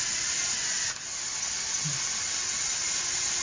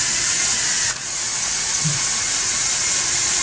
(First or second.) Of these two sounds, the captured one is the first